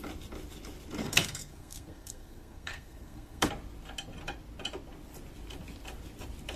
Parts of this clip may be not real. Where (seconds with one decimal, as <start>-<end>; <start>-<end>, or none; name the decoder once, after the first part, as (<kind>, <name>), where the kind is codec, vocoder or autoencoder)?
1.0-3.5 (codec, SNAC)